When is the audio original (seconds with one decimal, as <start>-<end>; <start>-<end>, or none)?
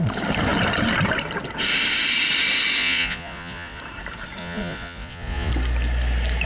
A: 0.0-2.8; 3.8-4.4; 5.5-6.5